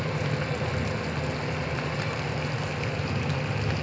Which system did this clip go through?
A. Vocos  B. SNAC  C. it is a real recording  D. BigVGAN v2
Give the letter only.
C